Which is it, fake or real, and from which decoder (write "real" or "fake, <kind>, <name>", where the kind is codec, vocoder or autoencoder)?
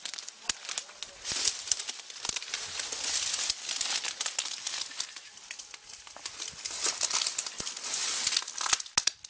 real